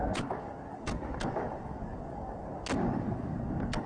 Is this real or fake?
fake